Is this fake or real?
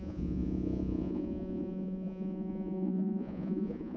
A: fake